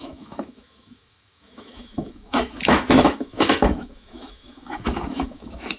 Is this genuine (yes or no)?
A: no